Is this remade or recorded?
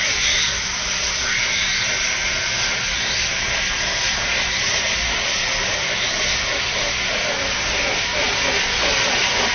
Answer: recorded